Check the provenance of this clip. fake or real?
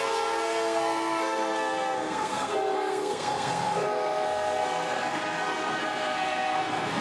fake